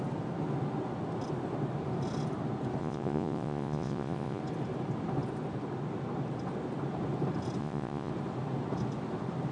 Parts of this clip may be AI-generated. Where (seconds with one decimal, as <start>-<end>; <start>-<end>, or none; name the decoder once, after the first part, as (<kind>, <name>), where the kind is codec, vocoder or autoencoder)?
2.8-4.4 (vocoder, Vocos); 7.6-8.1

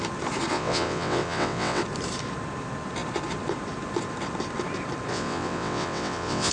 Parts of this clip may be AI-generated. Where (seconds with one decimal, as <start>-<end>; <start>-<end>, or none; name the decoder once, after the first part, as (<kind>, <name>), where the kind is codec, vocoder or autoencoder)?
0.5-1.8 (vocoder, WaveNeXt); 5.1-6.5

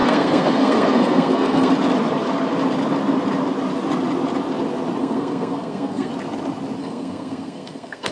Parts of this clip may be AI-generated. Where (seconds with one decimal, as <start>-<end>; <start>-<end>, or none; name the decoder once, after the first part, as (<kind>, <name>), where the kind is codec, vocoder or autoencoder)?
0.0-1.7 (codec, SNAC); 5.0-6.1; 6.8-8.1

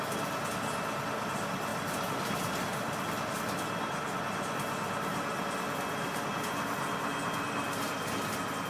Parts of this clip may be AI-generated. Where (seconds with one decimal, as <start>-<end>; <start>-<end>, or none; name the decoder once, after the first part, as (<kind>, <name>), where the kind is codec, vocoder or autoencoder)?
none

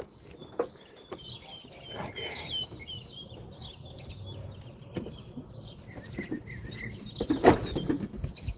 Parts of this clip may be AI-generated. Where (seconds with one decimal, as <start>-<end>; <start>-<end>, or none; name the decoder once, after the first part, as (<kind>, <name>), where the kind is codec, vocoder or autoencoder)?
0.4-4.1 (vocoder, BigVGAN v2); 4.8-8.6

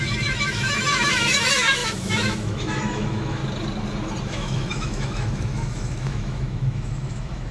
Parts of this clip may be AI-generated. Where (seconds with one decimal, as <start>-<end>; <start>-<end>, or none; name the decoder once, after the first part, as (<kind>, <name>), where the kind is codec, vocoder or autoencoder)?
0.0-3.4 (autoencoder, DAC-VAE); 4.2-7.5

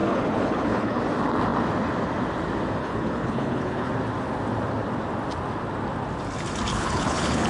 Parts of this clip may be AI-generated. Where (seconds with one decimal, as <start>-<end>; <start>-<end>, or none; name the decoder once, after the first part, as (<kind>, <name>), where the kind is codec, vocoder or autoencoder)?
0.0-1.0 (codec, HILCodec); 2.8-3.9; 6.7-7.5

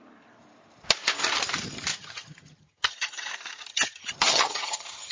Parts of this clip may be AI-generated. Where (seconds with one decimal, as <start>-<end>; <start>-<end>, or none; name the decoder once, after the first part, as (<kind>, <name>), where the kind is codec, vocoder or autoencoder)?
1.9-3.3 (vocoder, HiFi-GAN); 3.7-5.1